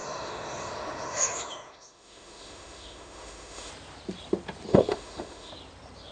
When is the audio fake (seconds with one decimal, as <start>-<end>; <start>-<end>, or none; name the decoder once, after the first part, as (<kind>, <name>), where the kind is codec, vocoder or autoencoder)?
0.0-3.7 (autoencoder, DAC-VAE); 4.7-5.5